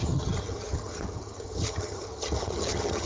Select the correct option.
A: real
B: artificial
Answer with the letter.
B